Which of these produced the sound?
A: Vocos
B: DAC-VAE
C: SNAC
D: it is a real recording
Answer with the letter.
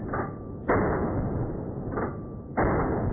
D